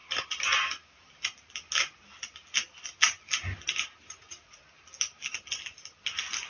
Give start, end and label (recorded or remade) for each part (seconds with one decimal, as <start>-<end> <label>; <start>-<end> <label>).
0.0-4.0 recorded; 4.0-4.6 remade; 4.6-6.5 recorded